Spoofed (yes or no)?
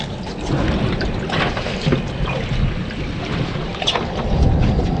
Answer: no